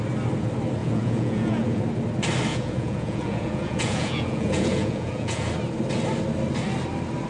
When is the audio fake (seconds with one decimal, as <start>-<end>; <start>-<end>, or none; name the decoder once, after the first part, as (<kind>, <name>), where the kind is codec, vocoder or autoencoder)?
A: 0.8-1.8 (vocoder, Vocos); 2.5-5.5